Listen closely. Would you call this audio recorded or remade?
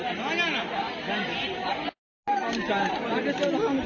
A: recorded